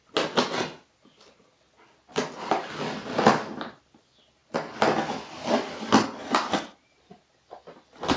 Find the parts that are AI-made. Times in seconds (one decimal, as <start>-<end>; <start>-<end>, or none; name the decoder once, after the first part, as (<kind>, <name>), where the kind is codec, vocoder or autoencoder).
none